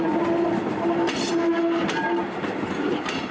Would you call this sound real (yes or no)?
yes